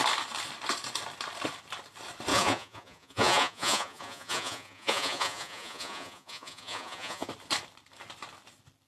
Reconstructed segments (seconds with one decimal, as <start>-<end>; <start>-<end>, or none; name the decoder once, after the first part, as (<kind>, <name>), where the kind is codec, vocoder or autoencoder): 2.3-7.3 (vocoder, Vocos)